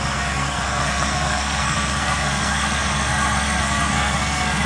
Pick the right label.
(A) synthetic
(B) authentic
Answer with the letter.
A